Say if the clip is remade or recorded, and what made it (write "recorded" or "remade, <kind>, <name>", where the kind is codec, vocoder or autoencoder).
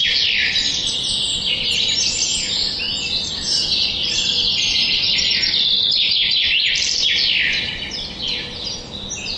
recorded